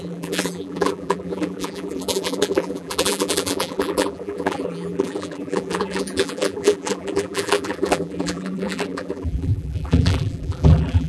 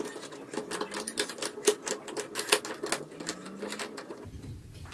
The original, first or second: second